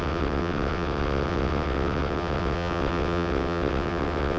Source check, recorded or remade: remade